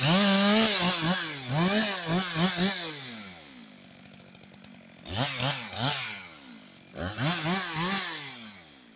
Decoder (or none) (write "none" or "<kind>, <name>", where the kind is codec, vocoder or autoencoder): none